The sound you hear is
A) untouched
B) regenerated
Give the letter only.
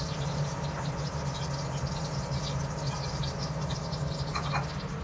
A